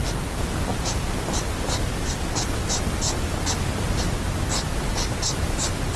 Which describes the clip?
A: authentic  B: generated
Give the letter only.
A